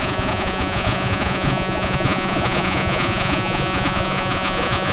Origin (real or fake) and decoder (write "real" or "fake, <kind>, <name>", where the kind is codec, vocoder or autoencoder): fake, vocoder, Vocos